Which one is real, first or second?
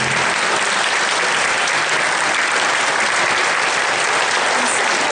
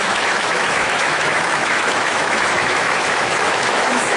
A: first